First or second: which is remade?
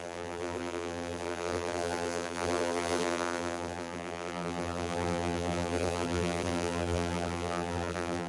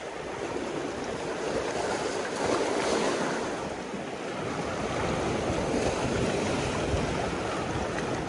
first